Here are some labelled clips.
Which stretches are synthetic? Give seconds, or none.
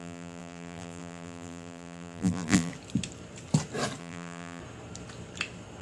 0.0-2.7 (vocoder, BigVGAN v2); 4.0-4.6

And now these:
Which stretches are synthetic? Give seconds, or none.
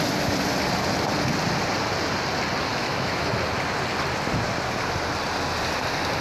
2.7-3.3 (autoencoder, DAC-VAE)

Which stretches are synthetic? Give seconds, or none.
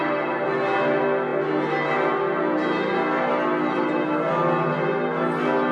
none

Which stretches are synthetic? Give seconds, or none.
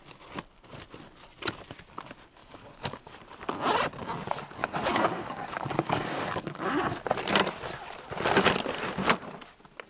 2.4-3.1 (codec, DAC); 4.6-6.8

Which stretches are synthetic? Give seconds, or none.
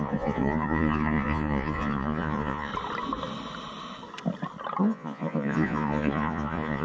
0.0-2.7 (vocoder, Vocos); 4.8-6.8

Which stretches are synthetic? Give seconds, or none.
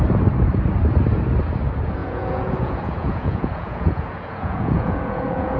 2.0-5.6 (vocoder, Vocos)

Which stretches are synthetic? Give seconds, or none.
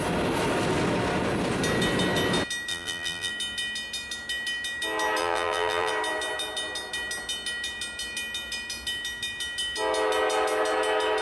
2.7-3.3 (vocoder, BigVGAN v2); 5.2-5.9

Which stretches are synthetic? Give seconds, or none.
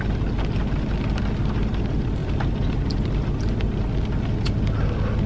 2.2-3.3 (vocoder, BigVGAN v2)